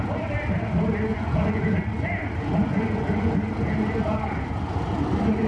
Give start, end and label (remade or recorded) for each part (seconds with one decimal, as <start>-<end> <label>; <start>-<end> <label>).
0.0-1.1 recorded; 1.1-1.6 remade; 1.6-2.7 recorded; 2.7-3.3 remade; 3.3-5.5 recorded